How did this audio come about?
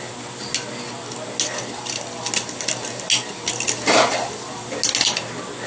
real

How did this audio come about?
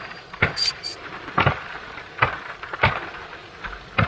real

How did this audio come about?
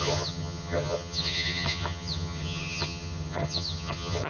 fake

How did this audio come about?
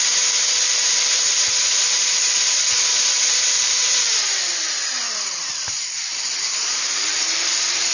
fake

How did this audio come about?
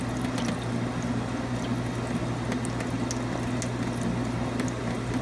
real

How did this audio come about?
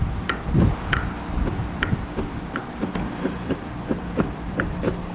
fake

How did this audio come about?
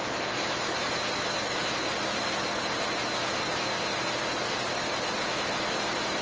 real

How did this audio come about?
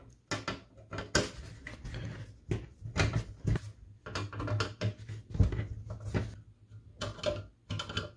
real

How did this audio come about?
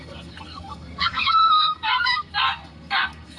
fake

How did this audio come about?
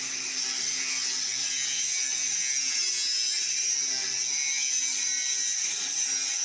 real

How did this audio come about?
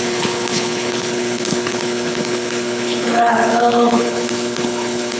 fake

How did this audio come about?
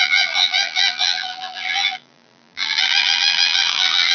fake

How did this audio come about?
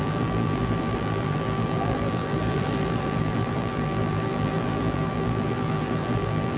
fake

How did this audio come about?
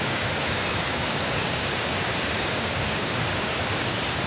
fake